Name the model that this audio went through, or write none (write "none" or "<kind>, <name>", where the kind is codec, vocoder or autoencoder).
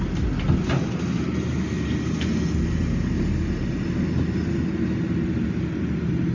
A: none